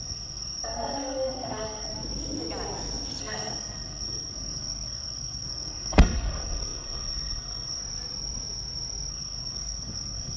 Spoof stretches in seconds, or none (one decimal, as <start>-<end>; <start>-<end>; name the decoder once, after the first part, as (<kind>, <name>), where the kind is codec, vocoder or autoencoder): 0.0-1.9 (codec, SNAC); 3.2-7.8; 9.1-10.4